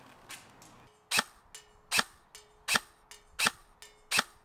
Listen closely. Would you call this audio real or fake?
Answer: real